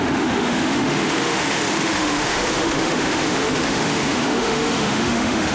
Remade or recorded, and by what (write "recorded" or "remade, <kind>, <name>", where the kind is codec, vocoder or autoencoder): remade, autoencoder, DAC-VAE